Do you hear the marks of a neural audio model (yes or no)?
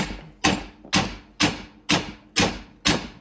no